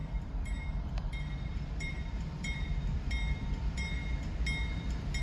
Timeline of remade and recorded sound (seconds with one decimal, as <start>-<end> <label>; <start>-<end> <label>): 0.0-4.0 remade; 4.0-5.2 recorded